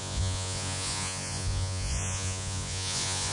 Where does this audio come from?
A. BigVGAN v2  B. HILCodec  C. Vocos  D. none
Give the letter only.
C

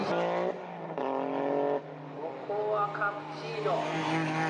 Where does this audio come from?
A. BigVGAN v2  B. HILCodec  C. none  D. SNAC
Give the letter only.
C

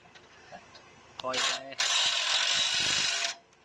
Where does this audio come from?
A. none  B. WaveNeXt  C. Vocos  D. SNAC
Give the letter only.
A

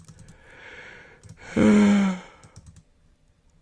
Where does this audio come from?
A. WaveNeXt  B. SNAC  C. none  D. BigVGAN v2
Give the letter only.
C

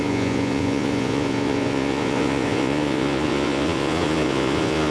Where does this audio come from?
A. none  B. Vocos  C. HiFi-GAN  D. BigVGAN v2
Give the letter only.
B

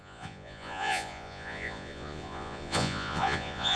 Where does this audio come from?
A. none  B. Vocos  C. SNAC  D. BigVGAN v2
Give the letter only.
B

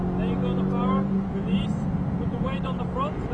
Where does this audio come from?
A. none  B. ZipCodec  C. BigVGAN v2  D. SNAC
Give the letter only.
A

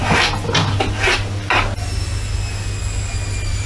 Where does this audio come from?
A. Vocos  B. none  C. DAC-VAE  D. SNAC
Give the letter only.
B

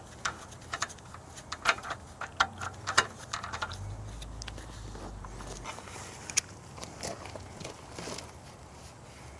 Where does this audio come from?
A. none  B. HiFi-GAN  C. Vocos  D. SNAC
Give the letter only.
A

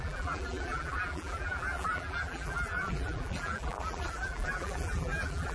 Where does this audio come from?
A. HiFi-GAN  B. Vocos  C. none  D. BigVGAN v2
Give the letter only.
D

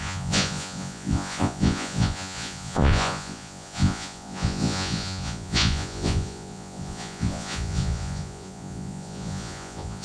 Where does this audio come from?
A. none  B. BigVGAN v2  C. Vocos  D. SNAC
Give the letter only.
C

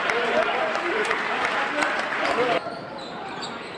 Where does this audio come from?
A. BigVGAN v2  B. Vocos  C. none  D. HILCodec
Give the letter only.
A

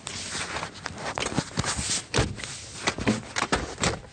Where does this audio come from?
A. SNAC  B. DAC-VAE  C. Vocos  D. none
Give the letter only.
D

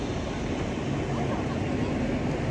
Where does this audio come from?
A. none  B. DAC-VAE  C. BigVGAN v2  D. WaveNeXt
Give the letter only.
A